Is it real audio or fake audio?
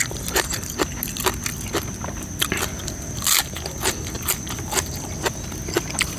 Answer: real